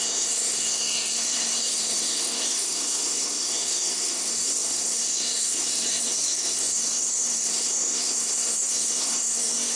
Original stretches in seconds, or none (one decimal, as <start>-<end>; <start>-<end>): none